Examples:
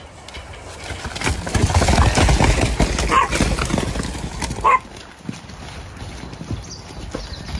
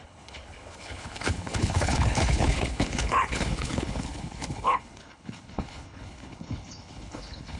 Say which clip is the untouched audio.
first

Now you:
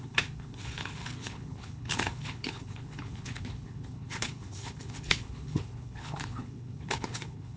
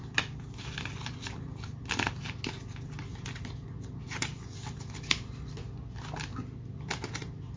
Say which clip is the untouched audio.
second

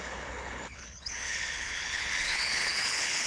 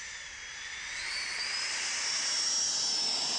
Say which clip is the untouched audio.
second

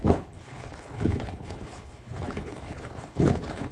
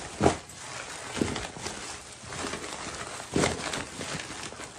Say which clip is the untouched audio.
second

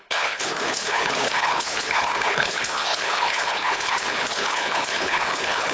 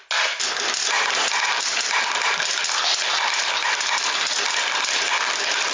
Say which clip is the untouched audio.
second